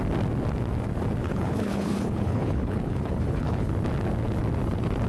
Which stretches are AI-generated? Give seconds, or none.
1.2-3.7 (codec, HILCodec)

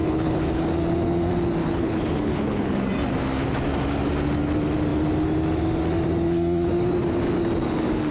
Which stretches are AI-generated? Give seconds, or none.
0.0-0.6 (codec, HILCodec); 1.6-2.7

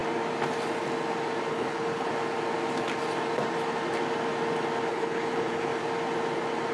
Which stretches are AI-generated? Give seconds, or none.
1.5-2.1 (codec, HILCodec); 4.9-5.7

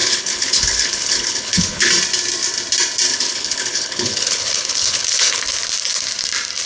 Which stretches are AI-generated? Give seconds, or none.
0.0-1.9 (codec, HILCodec); 3.1-5.4